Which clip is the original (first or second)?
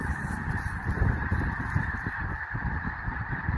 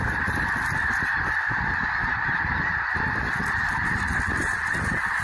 second